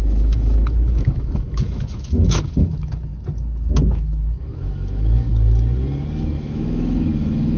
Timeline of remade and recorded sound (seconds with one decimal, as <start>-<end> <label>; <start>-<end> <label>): 0.0-3.1 remade; 3.1-3.9 recorded; 3.9-5.3 remade; 5.3-6.2 recorded; 6.2-7.6 remade